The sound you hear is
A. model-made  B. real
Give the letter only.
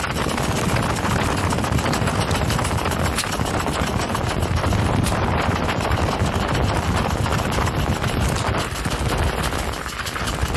A